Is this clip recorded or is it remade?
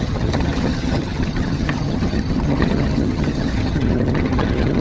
remade